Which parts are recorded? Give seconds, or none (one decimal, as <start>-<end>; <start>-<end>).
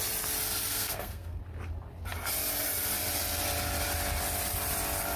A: 0.0-0.7; 1.4-5.2